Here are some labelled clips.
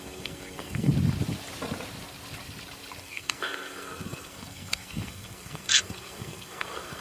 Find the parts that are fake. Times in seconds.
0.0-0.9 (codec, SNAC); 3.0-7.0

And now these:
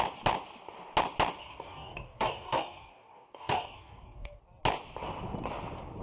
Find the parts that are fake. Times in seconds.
1.4-4.4 (codec, DAC)

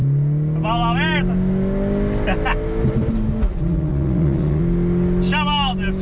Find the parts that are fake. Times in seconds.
3.5-4.6 (vocoder, Vocos)

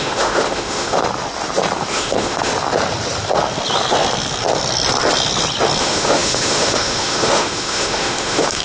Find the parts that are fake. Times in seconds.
0.0-1.0 (autoencoder, DAC-VAE); 1.9-2.5; 5.8-8.6

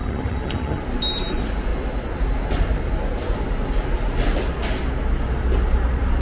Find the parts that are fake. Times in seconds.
0.0-0.8 (vocoder, HiFi-GAN)